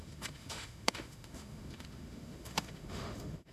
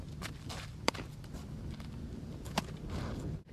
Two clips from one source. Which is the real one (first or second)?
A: second